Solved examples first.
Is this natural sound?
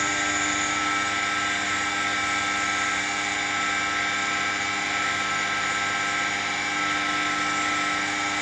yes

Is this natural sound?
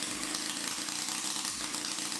yes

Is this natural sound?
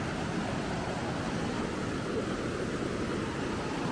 yes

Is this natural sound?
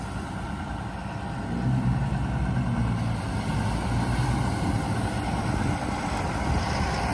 yes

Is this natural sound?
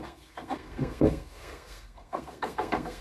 no